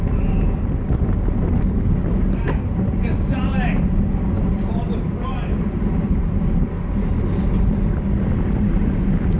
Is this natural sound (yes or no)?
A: yes